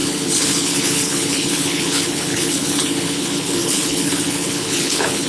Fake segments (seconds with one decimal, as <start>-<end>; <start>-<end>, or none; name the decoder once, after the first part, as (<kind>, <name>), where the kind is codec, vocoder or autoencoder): 0.0-5.3 (codec, HILCodec)